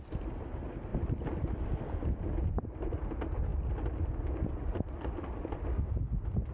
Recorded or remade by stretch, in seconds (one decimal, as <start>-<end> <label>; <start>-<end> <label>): 0.0-6.5 recorded